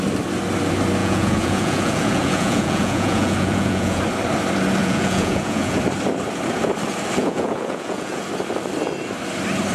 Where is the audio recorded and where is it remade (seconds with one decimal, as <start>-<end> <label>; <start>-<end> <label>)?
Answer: 0.0-1.0 recorded; 1.0-4.0 remade; 4.0-4.8 recorded; 4.8-5.8 remade; 5.8-7.2 recorded; 7.2-8.2 remade; 8.2-9.7 recorded